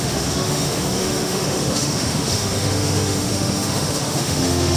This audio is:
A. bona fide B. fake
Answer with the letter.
B